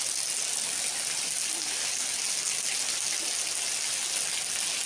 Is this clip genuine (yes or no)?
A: yes